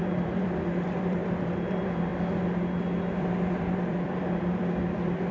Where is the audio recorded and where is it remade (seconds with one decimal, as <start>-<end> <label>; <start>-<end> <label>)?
0.0-2.1 remade; 2.1-3.2 recorded; 3.2-5.3 remade